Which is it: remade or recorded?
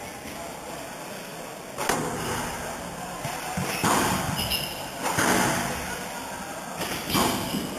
recorded